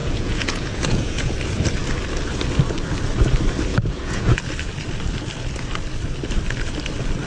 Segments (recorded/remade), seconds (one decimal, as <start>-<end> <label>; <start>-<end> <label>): 0.0-1.3 remade; 1.3-3.7 recorded; 3.7-4.4 remade; 4.4-7.3 recorded